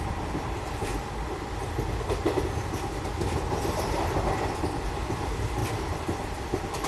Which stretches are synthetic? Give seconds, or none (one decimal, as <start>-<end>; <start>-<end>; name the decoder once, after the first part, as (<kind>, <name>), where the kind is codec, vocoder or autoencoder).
0.0-0.9 (vocoder, BigVGAN v2); 5.0-5.6; 6.4-6.9